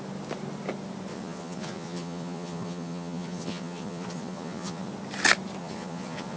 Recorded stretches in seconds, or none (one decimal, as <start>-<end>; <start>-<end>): 0.0-1.1; 4.9-5.6

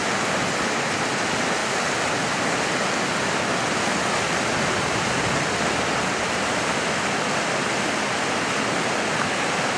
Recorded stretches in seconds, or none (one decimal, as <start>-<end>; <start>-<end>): 0.0-9.8